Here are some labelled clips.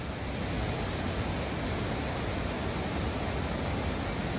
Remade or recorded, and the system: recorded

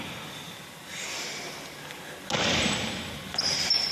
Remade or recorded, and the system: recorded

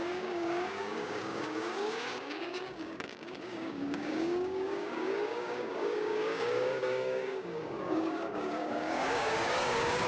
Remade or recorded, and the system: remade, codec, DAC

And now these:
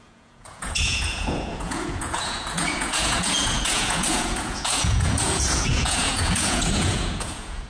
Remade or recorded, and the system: remade, vocoder, Vocos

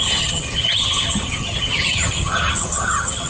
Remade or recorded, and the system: remade, vocoder, HiFi-GAN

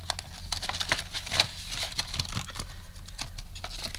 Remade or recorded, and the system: recorded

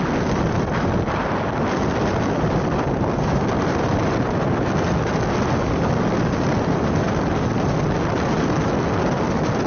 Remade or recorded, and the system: recorded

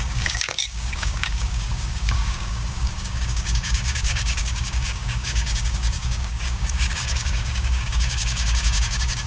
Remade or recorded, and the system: remade, codec, DAC